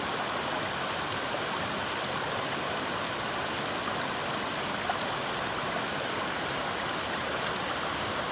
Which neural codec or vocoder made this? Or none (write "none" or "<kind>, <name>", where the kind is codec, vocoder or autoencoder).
none